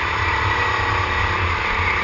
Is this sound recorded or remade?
recorded